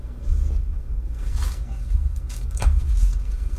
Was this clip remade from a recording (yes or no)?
yes